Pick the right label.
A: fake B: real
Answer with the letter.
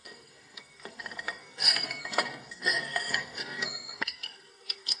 A